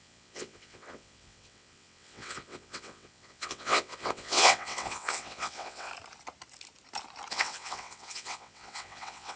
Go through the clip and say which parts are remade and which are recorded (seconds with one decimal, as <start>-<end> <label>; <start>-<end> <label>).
0.0-5.9 remade; 5.9-7.3 recorded; 7.3-9.4 remade